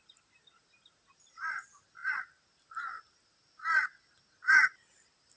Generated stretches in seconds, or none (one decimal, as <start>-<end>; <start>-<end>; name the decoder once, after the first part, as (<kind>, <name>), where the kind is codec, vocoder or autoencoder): none

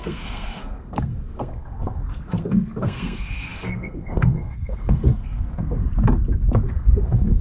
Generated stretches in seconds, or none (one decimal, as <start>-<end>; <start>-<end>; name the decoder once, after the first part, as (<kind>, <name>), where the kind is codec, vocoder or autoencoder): 0.0-5.8 (codec, SNAC); 6.7-7.4